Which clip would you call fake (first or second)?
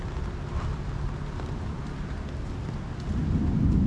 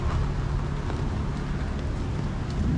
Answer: first